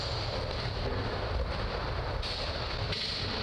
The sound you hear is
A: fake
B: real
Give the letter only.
B